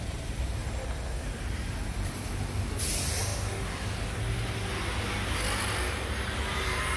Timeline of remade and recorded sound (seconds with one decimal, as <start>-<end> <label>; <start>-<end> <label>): 0.0-0.6 remade; 0.6-1.4 recorded; 1.4-3.3 remade; 3.3-5.8 recorded; 5.8-7.0 remade